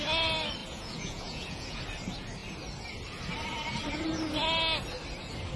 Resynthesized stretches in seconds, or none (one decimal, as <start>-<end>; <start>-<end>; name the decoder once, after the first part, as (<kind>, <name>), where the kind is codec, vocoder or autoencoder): 0.6-1.8 (vocoder, Vocos)